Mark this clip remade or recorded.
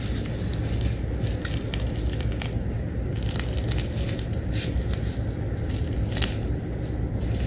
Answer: recorded